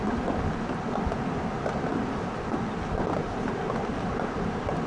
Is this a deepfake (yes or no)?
no